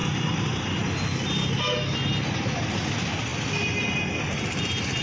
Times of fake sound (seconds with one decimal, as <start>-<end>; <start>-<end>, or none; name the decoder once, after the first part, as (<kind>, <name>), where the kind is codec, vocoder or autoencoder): none